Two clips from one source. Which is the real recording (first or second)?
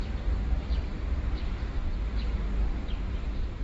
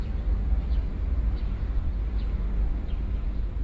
second